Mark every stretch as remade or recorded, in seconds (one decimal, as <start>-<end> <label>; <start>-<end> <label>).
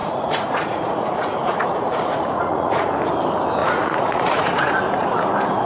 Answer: 0.0-2.9 remade; 2.9-3.6 recorded; 3.6-5.3 remade; 5.3-5.7 recorded